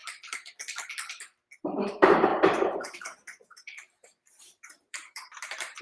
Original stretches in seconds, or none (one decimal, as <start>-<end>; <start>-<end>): 0.0-1.6